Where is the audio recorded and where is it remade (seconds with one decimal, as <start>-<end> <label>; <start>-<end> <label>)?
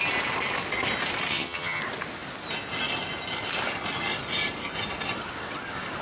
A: 0.0-1.3 recorded; 1.3-1.8 remade; 1.8-6.0 recorded